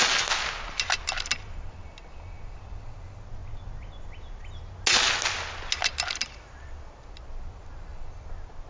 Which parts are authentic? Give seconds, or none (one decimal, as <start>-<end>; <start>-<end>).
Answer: 0.0-8.7

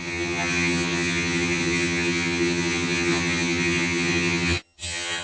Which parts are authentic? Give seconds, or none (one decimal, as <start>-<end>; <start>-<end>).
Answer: none

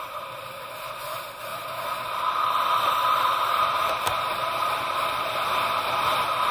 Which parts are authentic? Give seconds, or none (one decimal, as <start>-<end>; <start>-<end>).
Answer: 0.0-6.5